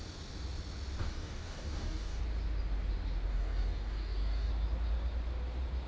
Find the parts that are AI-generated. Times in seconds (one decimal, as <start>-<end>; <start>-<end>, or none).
1.0-2.2; 3.3-4.5